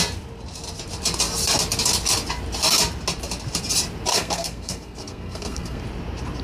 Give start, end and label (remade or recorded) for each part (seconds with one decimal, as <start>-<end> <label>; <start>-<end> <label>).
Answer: 0.0-4.1 recorded; 4.1-5.8 remade; 5.8-6.4 recorded